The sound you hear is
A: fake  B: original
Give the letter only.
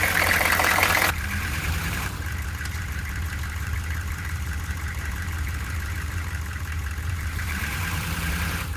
A